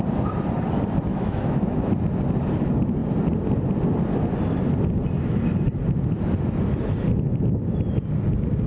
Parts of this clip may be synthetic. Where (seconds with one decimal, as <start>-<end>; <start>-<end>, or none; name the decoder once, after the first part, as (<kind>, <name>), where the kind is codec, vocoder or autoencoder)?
1.1-1.9 (autoencoder, DAC-VAE)